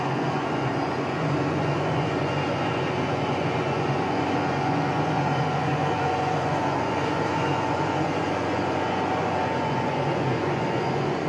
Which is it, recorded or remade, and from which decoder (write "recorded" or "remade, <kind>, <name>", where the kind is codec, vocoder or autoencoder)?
remade, vocoder, Vocos